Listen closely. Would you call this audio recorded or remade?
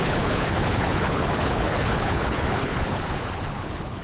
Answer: remade